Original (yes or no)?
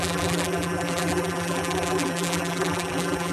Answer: no